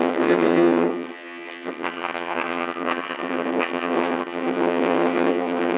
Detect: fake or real fake